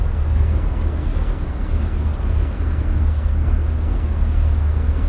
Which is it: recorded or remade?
remade